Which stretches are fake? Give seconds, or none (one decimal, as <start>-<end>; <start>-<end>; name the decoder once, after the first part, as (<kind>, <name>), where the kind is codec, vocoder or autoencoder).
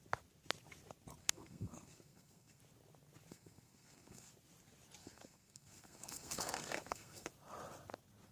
1.2-2.6 (codec, SNAC); 3.3-4.3; 5.0-7.3